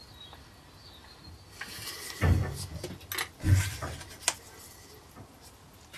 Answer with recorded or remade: recorded